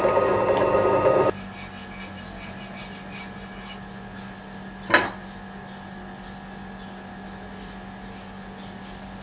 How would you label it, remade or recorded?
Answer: recorded